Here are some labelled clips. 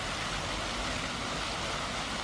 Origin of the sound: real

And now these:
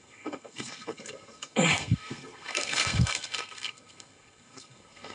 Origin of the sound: fake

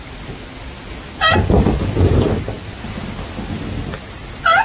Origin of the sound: real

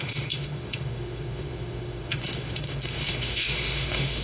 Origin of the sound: fake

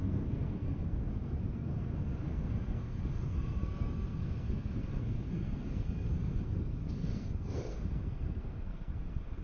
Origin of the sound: fake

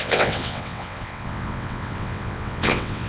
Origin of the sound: fake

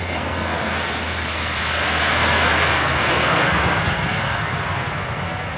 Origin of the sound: fake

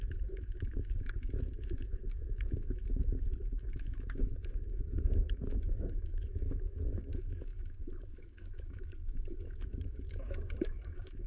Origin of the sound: fake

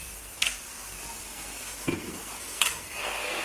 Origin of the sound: fake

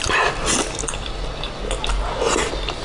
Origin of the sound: real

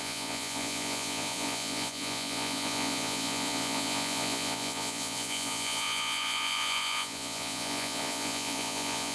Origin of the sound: fake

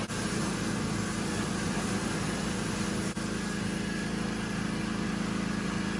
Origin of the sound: real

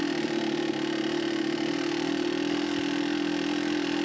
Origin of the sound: real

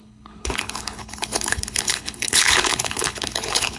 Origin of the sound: fake